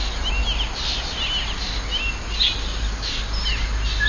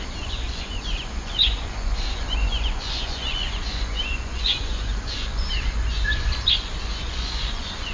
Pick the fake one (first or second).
second